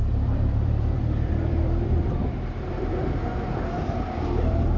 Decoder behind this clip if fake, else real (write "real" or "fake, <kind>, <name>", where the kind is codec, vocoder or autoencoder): fake, vocoder, BigVGAN v2